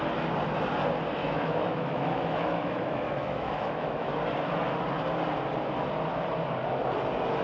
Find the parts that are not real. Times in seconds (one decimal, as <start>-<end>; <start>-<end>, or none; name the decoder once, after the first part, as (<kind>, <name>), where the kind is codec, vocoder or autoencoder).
1.2-4.1 (autoencoder, DAC-VAE)